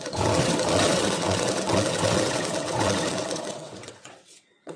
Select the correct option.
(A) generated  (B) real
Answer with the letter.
A